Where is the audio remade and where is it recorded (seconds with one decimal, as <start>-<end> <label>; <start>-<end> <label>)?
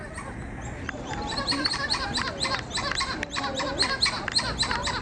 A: 0.0-5.0 recorded